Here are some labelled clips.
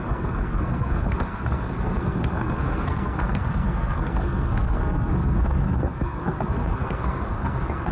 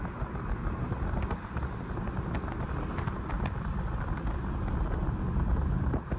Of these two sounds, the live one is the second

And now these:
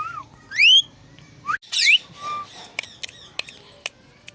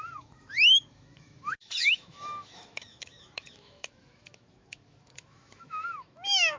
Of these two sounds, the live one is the first